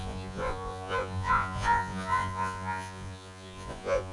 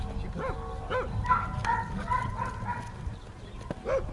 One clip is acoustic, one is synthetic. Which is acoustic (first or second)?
second